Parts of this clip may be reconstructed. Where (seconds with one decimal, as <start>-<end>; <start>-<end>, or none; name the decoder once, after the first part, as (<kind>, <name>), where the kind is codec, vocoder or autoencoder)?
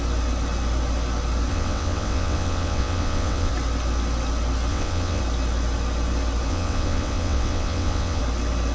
1.5-3.5 (vocoder, WaveNeXt); 4.7-5.2; 6.5-8.2